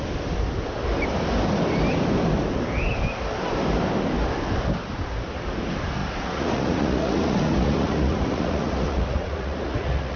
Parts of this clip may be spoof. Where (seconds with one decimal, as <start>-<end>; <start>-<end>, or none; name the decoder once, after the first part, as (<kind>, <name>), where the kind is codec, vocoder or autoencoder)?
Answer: 6.0-10.2 (vocoder, Vocos)